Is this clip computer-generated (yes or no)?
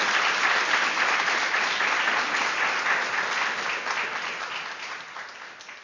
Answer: no